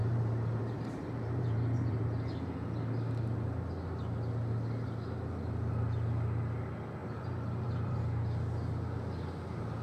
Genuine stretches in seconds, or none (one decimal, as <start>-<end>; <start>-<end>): 2.0-7.0; 8.0-9.8